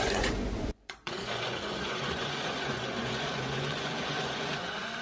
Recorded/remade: remade